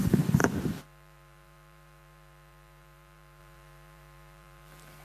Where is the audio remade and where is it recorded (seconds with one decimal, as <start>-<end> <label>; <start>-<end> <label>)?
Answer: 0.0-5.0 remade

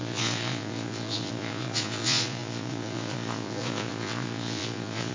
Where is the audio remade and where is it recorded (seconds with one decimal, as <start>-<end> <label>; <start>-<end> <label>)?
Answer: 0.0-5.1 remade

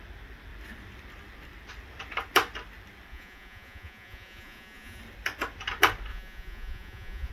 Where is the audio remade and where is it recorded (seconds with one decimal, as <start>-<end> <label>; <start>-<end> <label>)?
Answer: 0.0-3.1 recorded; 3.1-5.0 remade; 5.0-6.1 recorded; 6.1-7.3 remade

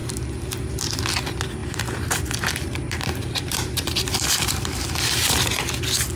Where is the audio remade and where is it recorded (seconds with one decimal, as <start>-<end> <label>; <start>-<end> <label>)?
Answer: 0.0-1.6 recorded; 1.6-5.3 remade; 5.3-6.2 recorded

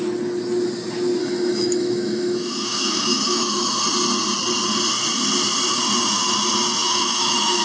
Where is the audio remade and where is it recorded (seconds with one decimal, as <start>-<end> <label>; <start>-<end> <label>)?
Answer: 0.0-1.2 recorded; 1.2-3.8 remade; 3.8-6.8 recorded; 6.8-7.6 remade

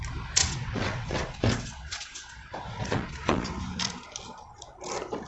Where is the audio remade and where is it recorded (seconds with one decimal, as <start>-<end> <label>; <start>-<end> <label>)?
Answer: 0.0-0.4 recorded; 0.4-3.6 remade; 3.6-5.3 recorded